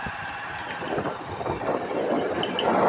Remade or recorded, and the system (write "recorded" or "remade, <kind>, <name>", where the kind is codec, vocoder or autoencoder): recorded